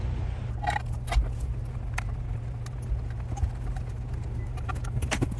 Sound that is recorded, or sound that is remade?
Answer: recorded